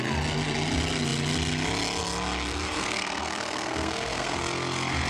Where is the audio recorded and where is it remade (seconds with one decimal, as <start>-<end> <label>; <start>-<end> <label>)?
0.0-2.8 recorded; 2.8-4.4 remade; 4.4-5.1 recorded